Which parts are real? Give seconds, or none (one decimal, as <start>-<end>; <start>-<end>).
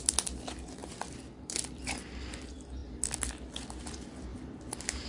0.0-0.8; 1.8-4.3